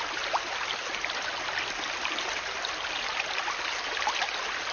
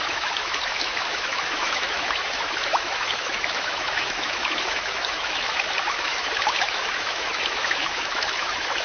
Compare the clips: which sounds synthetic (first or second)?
second